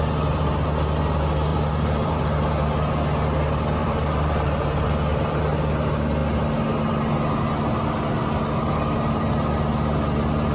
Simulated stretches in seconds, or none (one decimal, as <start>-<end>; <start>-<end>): 1.5-2.2; 3.8-5.4

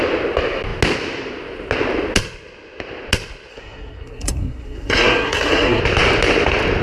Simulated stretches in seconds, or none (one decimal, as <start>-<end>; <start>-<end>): 3.5-5.8

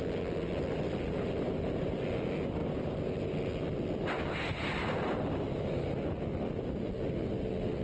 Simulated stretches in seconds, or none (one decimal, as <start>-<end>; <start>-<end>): none

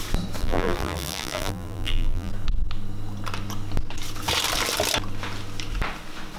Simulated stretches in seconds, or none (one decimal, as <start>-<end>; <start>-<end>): 0.4-2.3